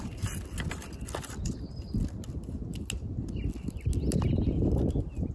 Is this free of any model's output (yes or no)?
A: yes